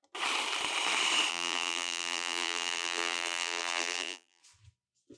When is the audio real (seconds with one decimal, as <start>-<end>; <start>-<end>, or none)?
0.0-1.3; 4.4-5.2